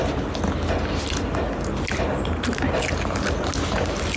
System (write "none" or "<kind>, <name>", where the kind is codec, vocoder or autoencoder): none